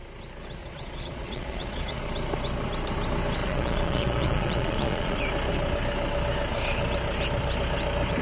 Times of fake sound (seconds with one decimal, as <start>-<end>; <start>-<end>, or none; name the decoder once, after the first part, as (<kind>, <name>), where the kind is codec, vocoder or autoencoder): 0.6-2.0 (vocoder, Vocos); 3.4-5.2